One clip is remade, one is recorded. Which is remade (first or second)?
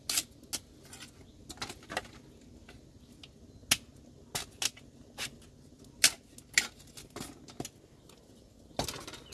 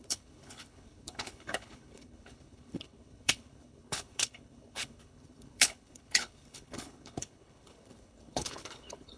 second